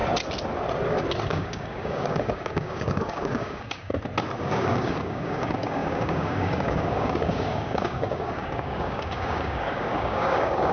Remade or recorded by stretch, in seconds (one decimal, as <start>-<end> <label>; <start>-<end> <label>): 0.0-1.3 recorded; 1.3-3.9 remade; 3.9-4.4 recorded; 4.4-10.7 remade